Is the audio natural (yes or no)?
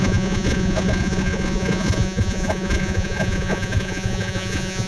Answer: no